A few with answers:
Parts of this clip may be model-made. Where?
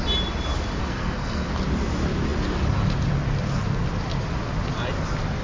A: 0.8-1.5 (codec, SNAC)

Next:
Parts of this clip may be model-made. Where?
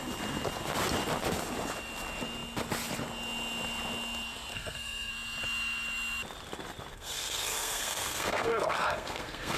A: 4.5-5.1 (codec, SNAC); 6.9-9.6